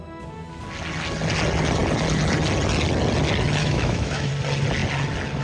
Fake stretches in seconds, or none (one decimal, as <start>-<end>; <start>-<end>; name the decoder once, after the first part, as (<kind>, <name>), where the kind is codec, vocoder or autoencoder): 3.6-4.3 (autoencoder, DAC-VAE)